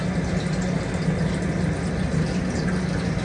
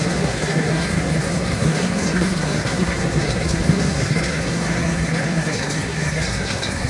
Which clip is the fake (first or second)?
second